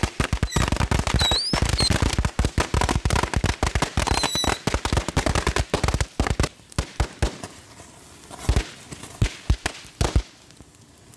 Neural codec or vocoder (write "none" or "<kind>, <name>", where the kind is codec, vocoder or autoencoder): none